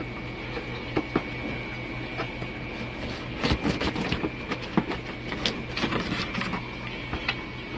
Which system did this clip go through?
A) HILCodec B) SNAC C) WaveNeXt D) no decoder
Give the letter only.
D